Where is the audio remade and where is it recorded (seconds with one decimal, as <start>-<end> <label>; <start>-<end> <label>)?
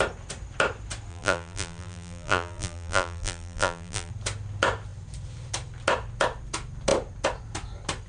0.0-1.1 recorded; 1.1-4.1 remade; 4.1-8.1 recorded